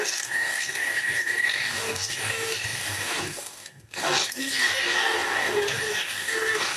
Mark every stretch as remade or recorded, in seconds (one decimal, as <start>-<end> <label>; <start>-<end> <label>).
0.0-6.8 remade